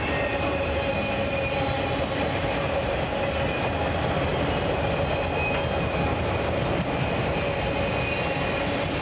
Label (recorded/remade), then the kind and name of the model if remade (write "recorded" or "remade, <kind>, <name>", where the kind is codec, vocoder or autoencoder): recorded